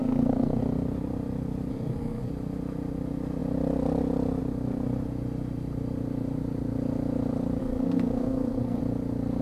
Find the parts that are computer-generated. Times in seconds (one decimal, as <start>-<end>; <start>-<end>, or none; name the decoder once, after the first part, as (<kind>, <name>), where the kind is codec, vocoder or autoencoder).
0.0-0.6 (codec, SNAC); 1.7-2.3; 7.6-8.8